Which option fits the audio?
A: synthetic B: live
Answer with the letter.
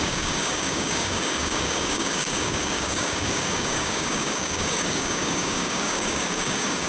A